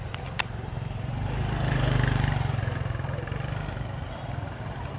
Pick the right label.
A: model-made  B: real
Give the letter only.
A